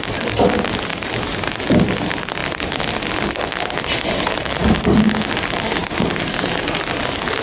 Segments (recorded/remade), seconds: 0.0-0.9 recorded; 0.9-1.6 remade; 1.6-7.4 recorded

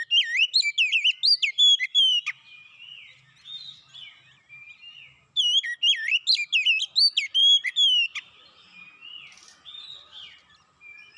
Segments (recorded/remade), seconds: 0.0-11.2 recorded

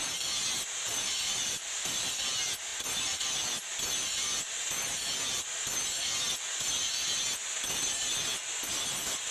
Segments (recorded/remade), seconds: 0.0-0.9 recorded; 0.9-2.1 remade; 2.1-9.3 recorded

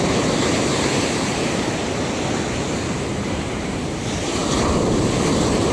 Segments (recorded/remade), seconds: 0.0-1.8 remade; 1.8-3.1 recorded; 3.1-4.4 remade; 4.4-5.7 recorded

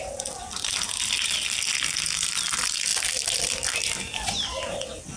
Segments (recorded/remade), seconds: 0.0-2.9 remade; 2.9-4.8 recorded; 4.8-5.2 remade

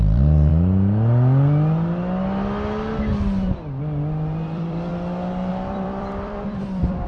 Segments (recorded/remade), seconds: 0.0-0.5 remade; 0.5-3.8 recorded; 3.8-4.9 remade; 4.9-5.5 recorded; 5.5-7.1 remade